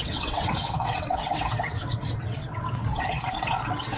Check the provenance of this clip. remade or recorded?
remade